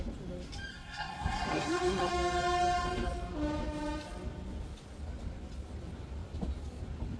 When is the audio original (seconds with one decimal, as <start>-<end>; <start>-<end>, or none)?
0.0-0.7; 2.1-7.2